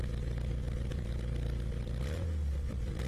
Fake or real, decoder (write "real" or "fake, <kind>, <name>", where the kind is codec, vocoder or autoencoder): fake, vocoder, BigVGAN v2